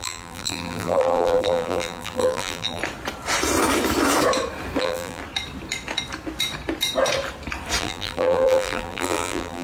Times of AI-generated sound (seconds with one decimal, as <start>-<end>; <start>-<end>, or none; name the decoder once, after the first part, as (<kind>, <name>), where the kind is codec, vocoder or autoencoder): 0.0-2.8 (vocoder, BigVGAN v2); 4.8-5.2; 7.8-9.6